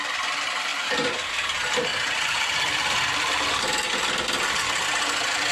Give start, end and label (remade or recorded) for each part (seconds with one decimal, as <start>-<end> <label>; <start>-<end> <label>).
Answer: 0.0-0.7 recorded; 0.7-1.3 remade; 1.3-1.9 recorded; 1.9-5.5 remade